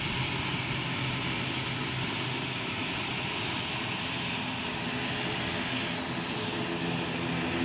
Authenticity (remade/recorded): recorded